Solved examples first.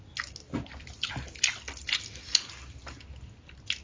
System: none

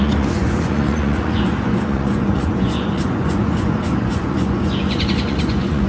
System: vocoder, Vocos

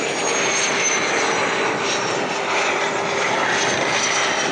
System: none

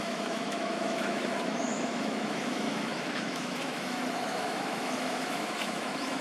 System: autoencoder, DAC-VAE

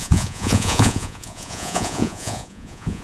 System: vocoder, Vocos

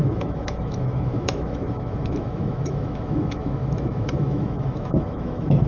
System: autoencoder, DAC-VAE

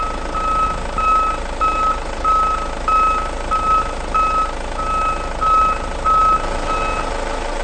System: none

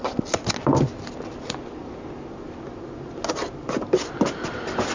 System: none